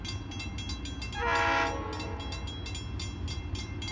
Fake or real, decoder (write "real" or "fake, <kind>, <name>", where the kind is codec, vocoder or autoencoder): real